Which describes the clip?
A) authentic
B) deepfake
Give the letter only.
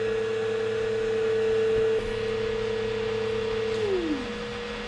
A